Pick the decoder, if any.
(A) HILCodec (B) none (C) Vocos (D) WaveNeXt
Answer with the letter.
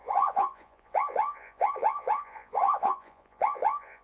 C